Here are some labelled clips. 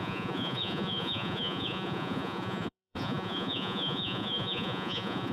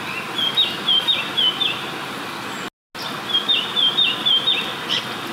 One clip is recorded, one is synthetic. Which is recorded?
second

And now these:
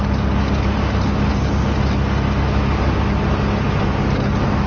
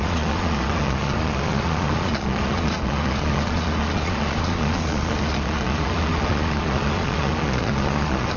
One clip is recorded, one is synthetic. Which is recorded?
first